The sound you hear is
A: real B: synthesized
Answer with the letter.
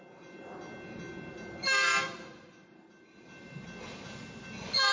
A